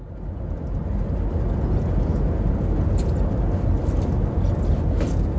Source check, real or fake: real